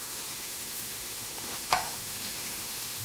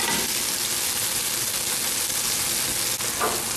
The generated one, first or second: first